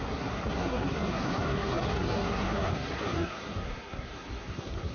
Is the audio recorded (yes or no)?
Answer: no